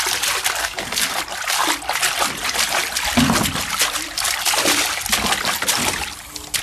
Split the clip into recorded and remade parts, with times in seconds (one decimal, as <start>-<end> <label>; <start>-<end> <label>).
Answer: 0.0-0.6 recorded; 0.6-1.2 remade; 1.2-6.6 recorded